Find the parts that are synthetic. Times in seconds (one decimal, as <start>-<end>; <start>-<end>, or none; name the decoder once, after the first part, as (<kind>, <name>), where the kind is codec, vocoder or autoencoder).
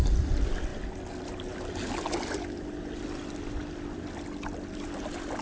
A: none